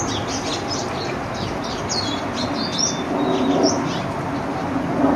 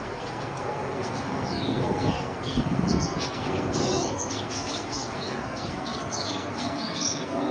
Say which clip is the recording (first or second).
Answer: first